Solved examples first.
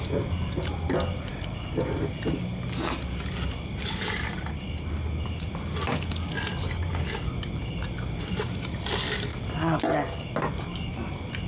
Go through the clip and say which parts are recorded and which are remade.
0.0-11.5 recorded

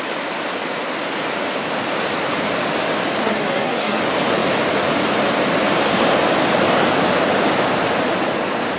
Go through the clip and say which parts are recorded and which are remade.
0.0-3.2 recorded; 3.2-4.0 remade; 4.0-8.8 recorded

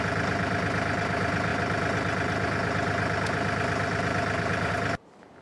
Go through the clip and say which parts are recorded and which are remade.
0.0-5.4 recorded